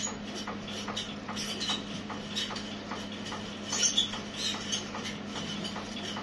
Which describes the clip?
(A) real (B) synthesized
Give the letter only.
A